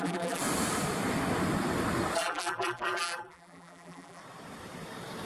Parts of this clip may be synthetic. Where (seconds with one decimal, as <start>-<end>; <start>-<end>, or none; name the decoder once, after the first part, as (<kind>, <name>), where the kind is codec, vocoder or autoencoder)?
0.0-0.4 (vocoder, BigVGAN v2); 2.2-4.2